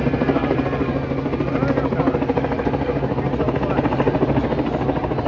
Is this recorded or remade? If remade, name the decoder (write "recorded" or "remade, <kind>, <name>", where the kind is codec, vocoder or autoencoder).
recorded